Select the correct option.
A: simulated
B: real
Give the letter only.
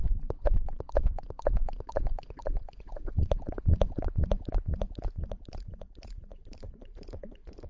A